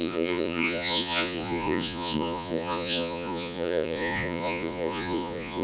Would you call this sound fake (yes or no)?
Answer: yes